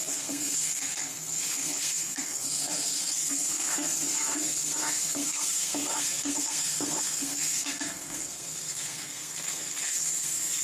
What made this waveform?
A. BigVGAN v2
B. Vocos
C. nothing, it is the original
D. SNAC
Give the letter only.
D